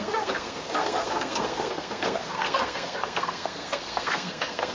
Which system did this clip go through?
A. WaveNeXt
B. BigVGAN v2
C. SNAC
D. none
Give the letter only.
C